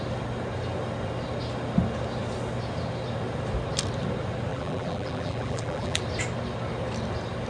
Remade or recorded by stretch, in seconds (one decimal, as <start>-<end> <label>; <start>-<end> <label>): 0.0-4.5 recorded; 4.5-6.0 remade; 6.0-7.5 recorded